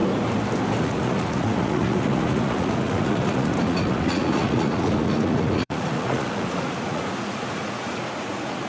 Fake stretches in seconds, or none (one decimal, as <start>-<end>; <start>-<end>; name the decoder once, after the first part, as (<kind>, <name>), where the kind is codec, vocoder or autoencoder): 0.8-8.7 (vocoder, Vocos)